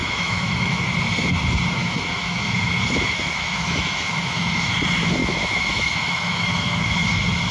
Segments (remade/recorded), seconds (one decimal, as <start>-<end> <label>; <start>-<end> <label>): 0.0-0.9 remade; 0.9-1.8 recorded; 1.8-4.7 remade; 4.7-5.2 recorded; 5.2-6.8 remade; 6.8-7.5 recorded

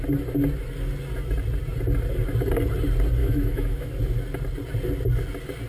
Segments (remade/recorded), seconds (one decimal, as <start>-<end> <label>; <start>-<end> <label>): 0.0-3.2 recorded; 3.2-3.9 remade; 3.9-5.7 recorded

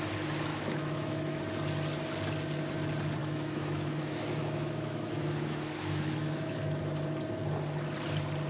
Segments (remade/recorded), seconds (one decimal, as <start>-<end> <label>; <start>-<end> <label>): 0.0-0.5 recorded; 0.5-1.4 remade; 1.4-3.2 recorded; 3.2-6.8 remade; 6.8-8.5 recorded